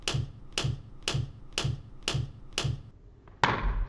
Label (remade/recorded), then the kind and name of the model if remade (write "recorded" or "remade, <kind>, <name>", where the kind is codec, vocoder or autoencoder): recorded